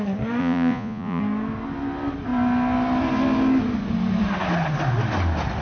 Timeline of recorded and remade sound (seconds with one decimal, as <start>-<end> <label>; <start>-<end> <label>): 0.0-0.4 recorded; 0.4-1.2 remade; 1.2-5.6 recorded